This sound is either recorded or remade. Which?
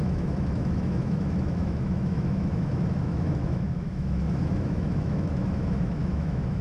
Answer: remade